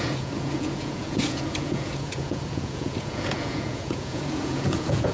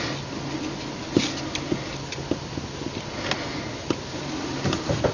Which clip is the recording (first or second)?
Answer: second